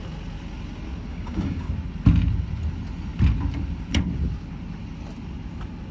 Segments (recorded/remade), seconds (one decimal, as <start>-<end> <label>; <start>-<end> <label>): 0.0-1.1 recorded; 1.1-1.7 remade; 1.7-5.9 recorded